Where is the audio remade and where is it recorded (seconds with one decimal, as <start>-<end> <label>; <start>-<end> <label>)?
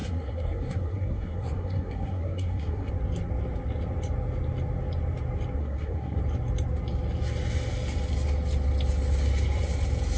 0.0-2.9 remade; 2.9-5.6 recorded; 5.6-6.2 remade; 6.2-10.2 recorded